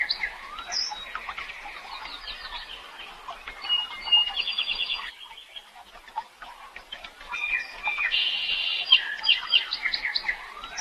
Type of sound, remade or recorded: recorded